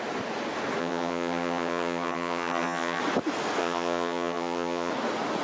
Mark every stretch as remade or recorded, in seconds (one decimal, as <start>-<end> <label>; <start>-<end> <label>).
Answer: 0.0-0.8 recorded; 0.8-3.0 remade; 3.0-3.6 recorded; 3.6-4.9 remade; 4.9-5.4 recorded